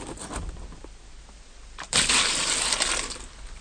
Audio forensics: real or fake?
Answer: real